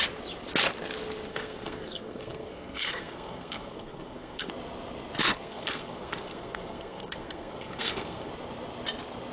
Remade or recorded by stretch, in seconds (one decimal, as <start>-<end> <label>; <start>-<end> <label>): 0.0-1.3 recorded; 1.3-4.5 remade; 4.5-5.2 recorded; 5.2-8.3 remade; 8.3-9.3 recorded